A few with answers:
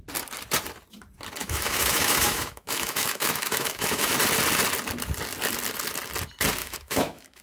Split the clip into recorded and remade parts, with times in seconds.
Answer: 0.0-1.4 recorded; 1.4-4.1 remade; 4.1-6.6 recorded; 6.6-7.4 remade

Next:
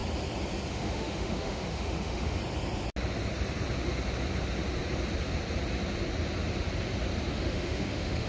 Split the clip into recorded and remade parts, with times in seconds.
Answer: 0.0-0.7 recorded; 0.7-2.4 remade; 2.4-7.3 recorded; 7.3-8.3 remade

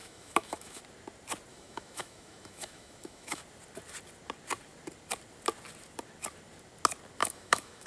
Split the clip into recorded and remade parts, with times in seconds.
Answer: 0.0-0.8 remade; 0.8-1.5 recorded; 1.5-3.4 remade; 3.4-7.2 recorded; 7.2-7.9 remade

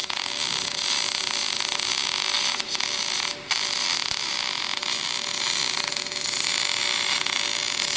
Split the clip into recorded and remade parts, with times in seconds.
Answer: 0.0-8.0 recorded

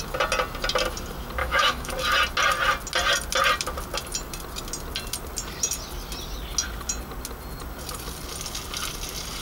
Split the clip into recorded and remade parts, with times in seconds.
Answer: 0.0-1.4 recorded; 1.4-1.9 remade; 1.9-9.4 recorded

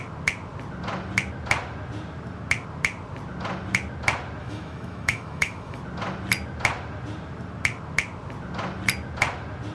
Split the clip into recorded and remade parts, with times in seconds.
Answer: 0.0-4.4 recorded; 4.4-5.8 remade; 5.8-9.7 recorded

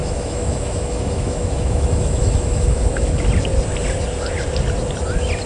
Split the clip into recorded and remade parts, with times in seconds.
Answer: 0.0-3.3 remade; 3.3-5.5 recorded